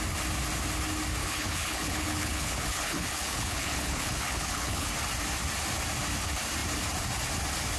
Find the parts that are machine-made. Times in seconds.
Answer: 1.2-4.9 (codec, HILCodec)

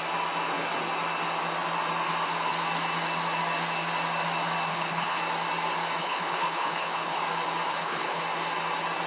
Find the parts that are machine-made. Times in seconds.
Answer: 4.7-5.2 (codec, HILCodec); 6.0-7.2; 7.7-8.2